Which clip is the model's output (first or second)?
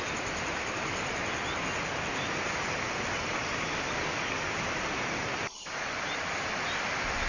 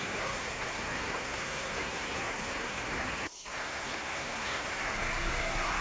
second